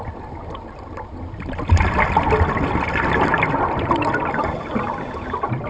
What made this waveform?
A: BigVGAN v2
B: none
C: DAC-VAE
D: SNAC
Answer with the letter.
A